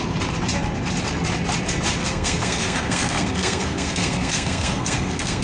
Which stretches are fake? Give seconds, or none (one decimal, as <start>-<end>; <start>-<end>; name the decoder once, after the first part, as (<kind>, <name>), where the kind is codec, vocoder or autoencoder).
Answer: 2.0-5.4 (codec, SNAC)